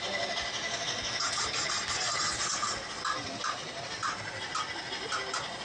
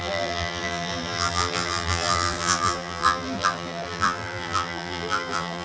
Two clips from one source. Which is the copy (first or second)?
second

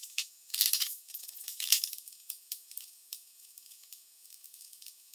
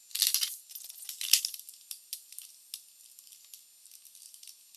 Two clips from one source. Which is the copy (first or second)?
first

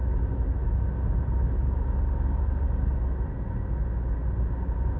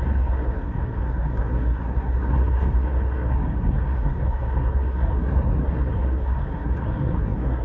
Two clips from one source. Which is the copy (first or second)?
second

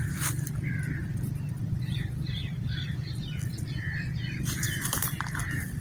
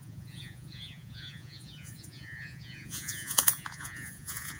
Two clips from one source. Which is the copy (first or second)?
second